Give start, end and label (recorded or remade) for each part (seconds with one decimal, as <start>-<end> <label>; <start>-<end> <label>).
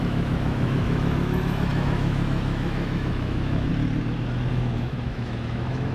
0.0-3.7 remade; 3.7-4.5 recorded; 4.5-5.9 remade